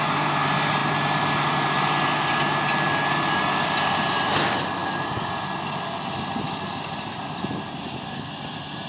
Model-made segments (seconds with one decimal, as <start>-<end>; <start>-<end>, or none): none